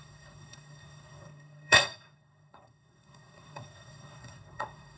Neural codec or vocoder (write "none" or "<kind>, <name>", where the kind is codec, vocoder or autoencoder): codec, SNAC